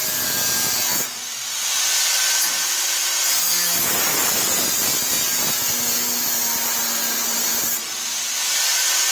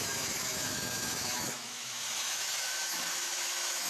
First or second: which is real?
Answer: first